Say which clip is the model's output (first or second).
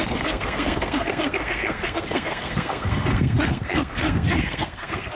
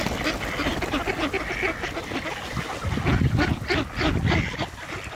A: first